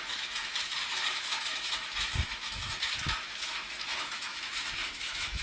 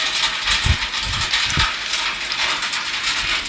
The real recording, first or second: second